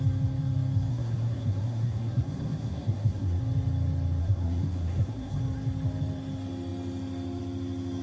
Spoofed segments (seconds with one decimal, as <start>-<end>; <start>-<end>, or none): 0.9-3.4; 4.2-5.4